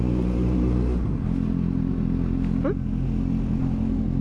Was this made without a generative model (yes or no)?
yes